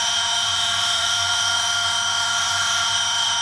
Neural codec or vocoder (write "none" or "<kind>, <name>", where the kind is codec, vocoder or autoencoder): autoencoder, DAC-VAE